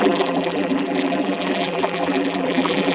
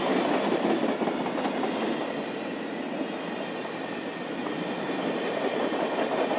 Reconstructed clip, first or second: first